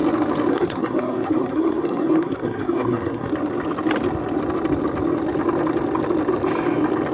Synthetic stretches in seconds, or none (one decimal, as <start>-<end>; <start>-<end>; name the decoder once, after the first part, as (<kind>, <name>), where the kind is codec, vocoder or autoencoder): 0.5-3.3 (codec, SNAC)

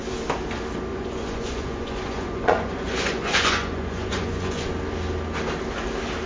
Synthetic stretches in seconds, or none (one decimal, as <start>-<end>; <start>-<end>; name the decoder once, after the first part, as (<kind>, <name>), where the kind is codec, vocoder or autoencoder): 0.9-4.7 (vocoder, Vocos)

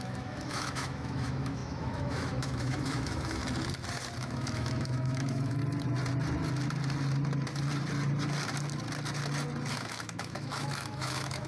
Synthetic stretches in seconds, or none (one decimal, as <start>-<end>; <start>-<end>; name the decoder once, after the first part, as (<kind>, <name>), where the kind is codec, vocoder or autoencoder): 0.0-3.4 (autoencoder, DAC-VAE); 4.2-5.6; 9.7-11.5